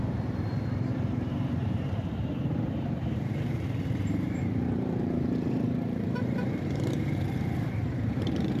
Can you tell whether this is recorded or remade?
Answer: remade